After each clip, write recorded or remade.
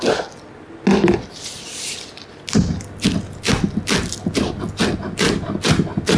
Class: recorded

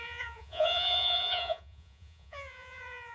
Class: remade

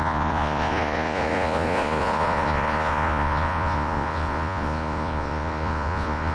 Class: remade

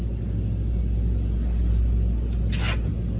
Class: recorded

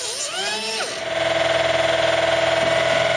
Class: recorded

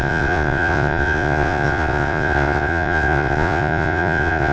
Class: remade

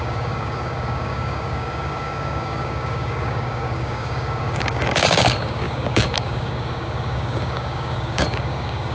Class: remade